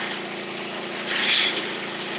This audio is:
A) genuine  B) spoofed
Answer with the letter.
A